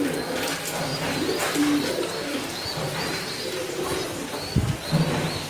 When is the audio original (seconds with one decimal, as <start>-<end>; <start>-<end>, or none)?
0.0-2.3; 4.3-5.5